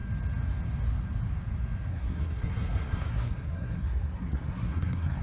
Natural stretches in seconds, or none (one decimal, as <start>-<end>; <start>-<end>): 0.0-1.9